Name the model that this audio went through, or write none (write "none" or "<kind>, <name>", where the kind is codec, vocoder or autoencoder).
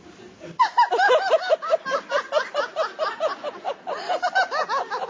none